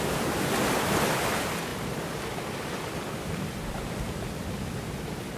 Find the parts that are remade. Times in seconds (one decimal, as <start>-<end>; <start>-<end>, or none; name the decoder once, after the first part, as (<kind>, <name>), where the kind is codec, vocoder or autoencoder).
1.7-4.9 (vocoder, BigVGAN v2)